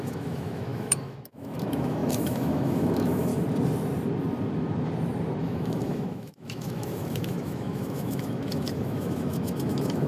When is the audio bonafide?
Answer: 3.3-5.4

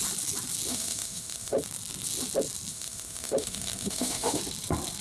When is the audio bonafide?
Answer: 0.0-0.7; 1.6-2.7; 4.4-5.0

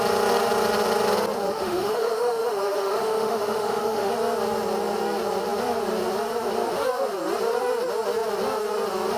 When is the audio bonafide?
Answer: 0.0-1.5; 4.1-9.2

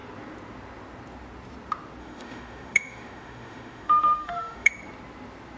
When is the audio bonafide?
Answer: 0.0-2.0; 4.7-5.6

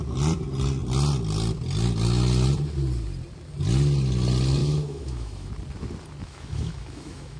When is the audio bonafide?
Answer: 0.0-4.6; 5.5-6.2